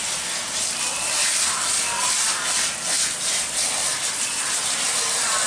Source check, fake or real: real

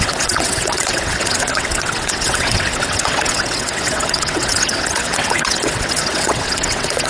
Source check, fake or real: fake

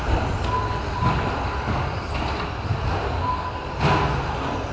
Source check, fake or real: real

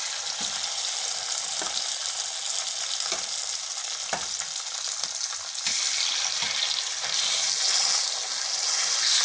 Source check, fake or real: real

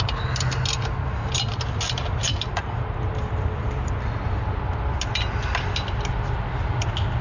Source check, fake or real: real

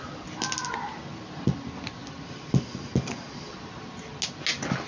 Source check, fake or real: real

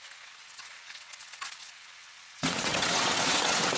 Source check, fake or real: fake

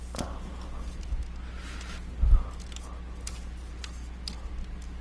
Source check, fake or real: real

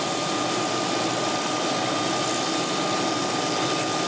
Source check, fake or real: real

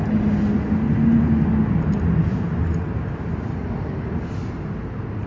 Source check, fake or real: real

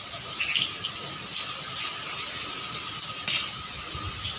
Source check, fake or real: real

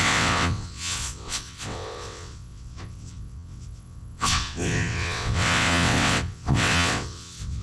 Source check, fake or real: fake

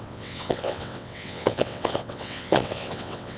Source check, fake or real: fake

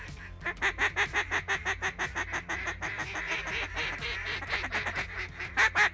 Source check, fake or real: real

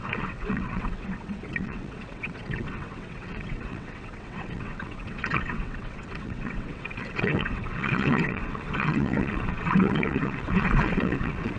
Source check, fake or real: fake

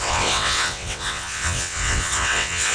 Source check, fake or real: fake